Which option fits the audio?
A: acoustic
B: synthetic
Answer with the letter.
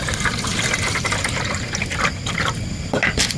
A